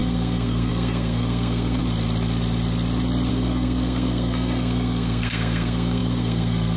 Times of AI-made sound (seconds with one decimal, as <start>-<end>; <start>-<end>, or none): 0.0-1.8; 3.3-6.8